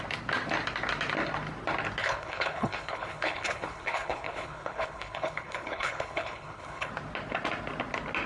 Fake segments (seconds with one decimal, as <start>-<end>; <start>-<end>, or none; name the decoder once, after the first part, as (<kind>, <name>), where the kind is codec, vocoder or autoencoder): 2.0-6.9 (codec, HILCodec)